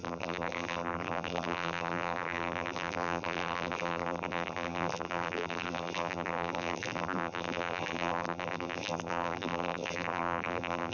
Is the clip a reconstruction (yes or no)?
yes